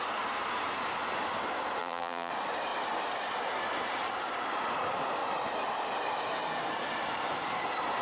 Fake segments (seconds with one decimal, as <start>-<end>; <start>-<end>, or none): 1.8-2.3